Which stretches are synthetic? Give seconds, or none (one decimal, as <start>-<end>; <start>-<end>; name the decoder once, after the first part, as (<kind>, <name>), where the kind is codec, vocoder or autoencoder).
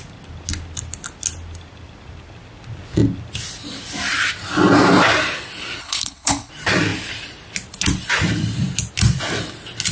5.8-6.5 (codec, HILCodec)